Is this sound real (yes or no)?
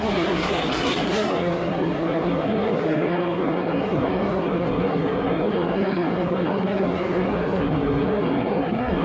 no